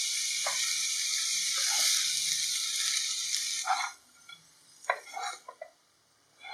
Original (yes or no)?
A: yes